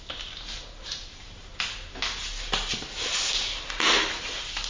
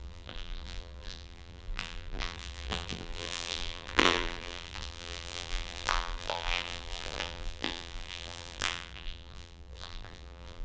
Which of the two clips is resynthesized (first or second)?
second